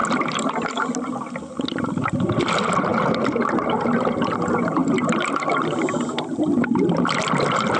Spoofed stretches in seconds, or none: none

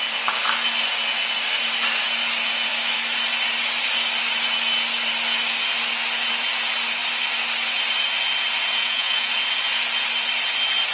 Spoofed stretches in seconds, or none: 8.8-9.3

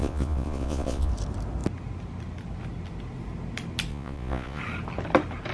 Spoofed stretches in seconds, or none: 0.0-1.1; 3.9-4.6

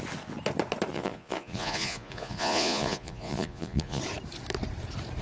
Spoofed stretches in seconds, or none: 0.9-4.0

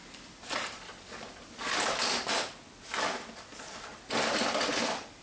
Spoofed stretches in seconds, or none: none

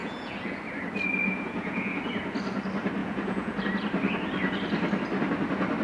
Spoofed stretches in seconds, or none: 0.0-0.6; 1.2-2.0; 3.0-3.6